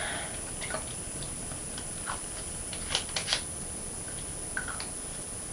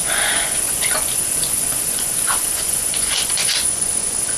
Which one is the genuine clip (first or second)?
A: first